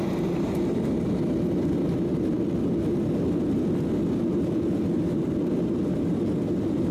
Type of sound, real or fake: real